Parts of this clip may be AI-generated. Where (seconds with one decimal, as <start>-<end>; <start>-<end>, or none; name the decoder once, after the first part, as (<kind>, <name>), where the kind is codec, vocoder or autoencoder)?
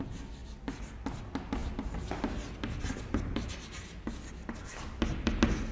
none